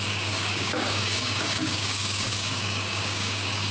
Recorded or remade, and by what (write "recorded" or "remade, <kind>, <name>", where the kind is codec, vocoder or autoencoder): remade, codec, DAC